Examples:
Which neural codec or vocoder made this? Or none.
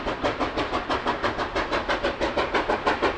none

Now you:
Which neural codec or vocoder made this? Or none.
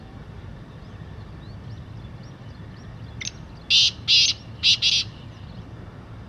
none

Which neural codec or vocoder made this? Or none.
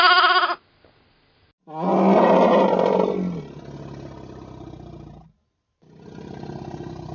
none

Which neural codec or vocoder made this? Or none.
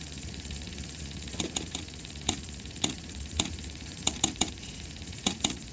vocoder, Vocos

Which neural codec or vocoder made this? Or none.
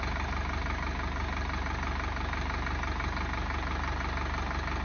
none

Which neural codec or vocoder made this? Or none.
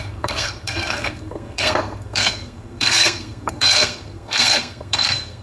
codec, SNAC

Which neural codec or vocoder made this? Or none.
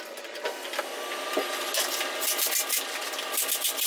none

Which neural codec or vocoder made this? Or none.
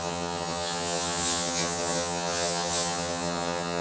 vocoder, HiFi-GAN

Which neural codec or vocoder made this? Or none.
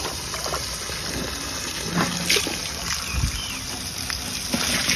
none